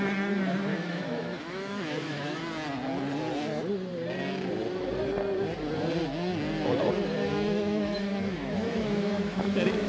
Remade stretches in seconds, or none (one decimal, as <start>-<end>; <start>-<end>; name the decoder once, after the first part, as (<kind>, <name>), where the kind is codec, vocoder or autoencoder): 0.7-2.4 (autoencoder, DAC-VAE); 7.3-9.9